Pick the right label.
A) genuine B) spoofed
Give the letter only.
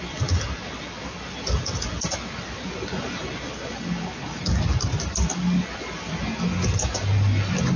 A